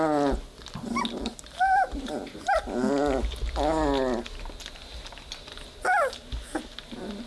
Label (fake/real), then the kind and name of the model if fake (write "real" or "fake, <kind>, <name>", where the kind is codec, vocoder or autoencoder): real